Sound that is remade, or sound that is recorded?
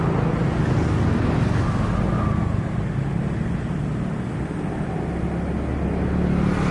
recorded